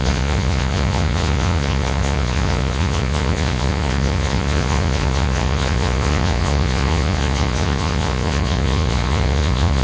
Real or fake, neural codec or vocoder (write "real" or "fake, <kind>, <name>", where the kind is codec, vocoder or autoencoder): fake, vocoder, Vocos